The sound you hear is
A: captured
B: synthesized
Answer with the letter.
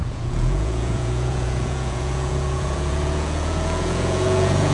B